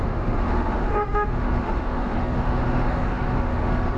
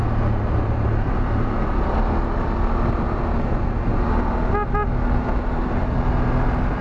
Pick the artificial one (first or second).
first